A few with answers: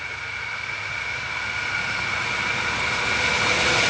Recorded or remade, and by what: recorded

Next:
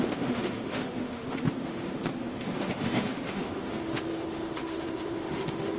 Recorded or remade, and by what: remade, autoencoder, DAC-VAE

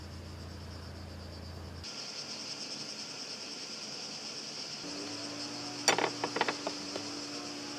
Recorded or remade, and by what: recorded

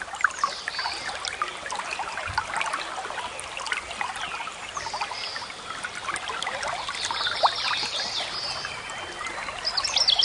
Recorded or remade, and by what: recorded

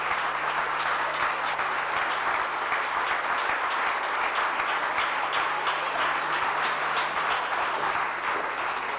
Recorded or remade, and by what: recorded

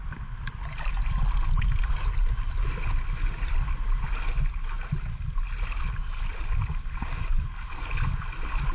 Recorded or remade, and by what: recorded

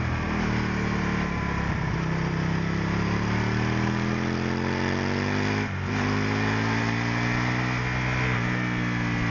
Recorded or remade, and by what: recorded